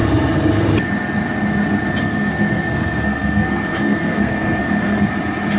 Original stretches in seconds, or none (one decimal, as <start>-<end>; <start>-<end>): 0.0-2.0; 5.1-5.6